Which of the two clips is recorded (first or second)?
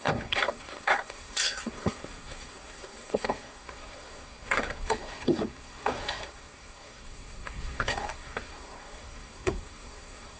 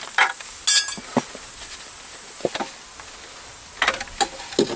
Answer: second